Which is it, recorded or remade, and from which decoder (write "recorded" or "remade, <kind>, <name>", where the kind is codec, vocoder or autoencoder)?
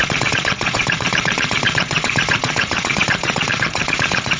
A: remade, vocoder, Vocos